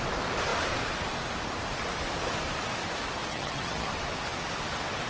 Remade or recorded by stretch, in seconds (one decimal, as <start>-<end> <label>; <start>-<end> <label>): 0.0-3.3 recorded; 3.3-3.9 remade; 3.9-5.1 recorded